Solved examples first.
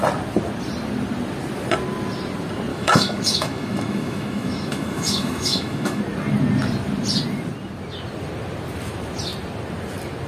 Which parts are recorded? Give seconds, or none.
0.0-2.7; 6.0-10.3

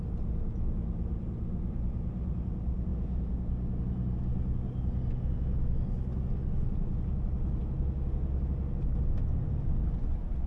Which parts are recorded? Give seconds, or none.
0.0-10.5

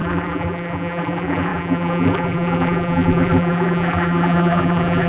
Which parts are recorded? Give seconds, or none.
none

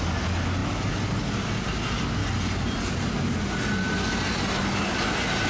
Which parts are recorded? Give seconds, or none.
0.0-5.5